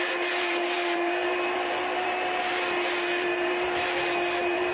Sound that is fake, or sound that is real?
fake